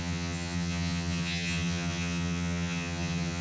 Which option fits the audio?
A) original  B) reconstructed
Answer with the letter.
B